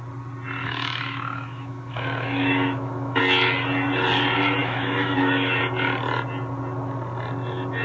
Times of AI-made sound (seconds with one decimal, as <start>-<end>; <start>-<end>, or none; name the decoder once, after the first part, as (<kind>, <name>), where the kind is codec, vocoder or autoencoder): 0.6-3.2 (autoencoder, DAC-VAE); 4.6-5.6